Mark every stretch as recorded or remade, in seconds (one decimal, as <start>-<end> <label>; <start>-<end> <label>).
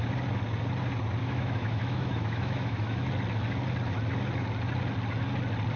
0.0-1.2 recorded; 1.2-3.1 remade; 3.1-5.8 recorded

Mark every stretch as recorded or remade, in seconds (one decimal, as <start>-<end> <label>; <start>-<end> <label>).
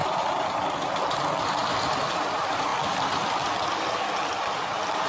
0.0-5.1 recorded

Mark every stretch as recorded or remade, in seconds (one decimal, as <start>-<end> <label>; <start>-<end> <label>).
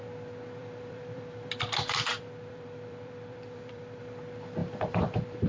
0.0-0.6 recorded; 0.6-1.5 remade; 1.5-2.1 recorded; 2.1-4.0 remade; 4.0-4.6 recorded; 4.6-5.5 remade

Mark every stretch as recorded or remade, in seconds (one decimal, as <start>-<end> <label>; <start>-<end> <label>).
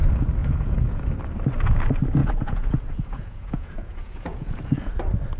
0.0-0.4 recorded; 0.4-1.1 remade; 1.1-2.2 recorded; 2.2-4.9 remade; 4.9-5.4 recorded